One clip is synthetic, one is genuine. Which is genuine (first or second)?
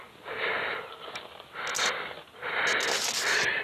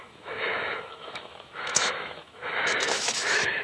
first